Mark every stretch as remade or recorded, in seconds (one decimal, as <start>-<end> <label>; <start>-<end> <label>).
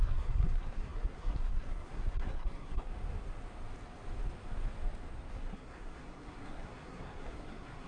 0.0-2.9 remade; 2.9-5.3 recorded; 5.3-7.9 remade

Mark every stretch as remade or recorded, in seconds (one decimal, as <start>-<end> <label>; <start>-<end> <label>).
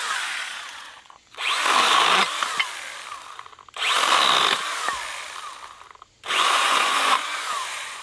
0.0-1.6 remade; 1.6-6.3 recorded; 6.3-8.0 remade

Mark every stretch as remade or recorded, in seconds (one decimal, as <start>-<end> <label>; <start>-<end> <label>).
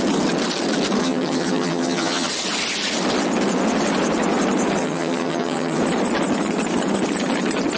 0.0-1.0 recorded; 1.0-2.3 remade; 2.3-4.8 recorded; 4.8-5.8 remade; 5.8-7.8 recorded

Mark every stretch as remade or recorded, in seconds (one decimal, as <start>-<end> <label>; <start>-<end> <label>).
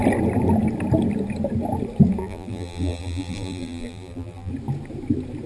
0.0-2.2 recorded; 2.2-4.5 remade; 4.5-5.5 recorded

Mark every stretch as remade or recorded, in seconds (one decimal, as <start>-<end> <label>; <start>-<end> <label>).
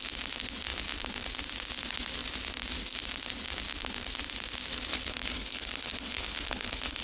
0.0-4.9 recorded; 4.9-7.0 remade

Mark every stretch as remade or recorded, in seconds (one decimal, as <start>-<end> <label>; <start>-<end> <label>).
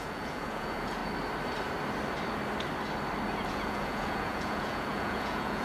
0.0-1.0 remade; 1.0-3.5 recorded; 3.5-5.6 remade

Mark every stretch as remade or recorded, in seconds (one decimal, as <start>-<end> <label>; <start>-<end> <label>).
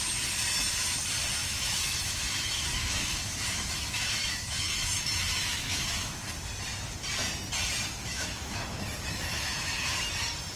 0.0-1.4 recorded; 1.4-6.3 remade; 6.3-8.0 recorded; 8.0-10.1 remade; 10.1-10.6 recorded